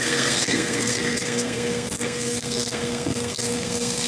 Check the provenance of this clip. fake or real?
fake